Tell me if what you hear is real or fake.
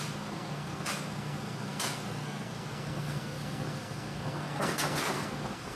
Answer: fake